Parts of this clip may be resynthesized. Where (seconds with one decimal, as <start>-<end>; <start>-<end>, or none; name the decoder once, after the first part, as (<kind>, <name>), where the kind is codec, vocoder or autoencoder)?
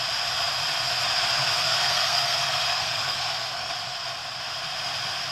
1.4-3.7 (codec, SNAC)